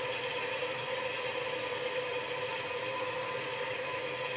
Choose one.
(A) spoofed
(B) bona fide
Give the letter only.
B